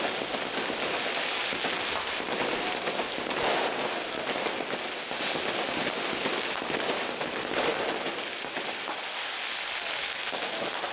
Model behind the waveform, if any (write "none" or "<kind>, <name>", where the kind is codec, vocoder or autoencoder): none